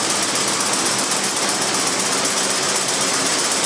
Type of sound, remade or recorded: recorded